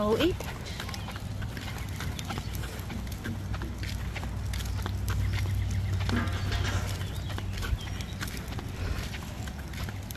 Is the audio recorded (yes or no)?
yes